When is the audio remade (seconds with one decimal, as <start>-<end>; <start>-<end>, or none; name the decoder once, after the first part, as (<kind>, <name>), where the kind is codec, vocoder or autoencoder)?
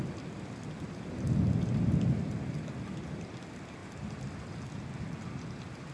none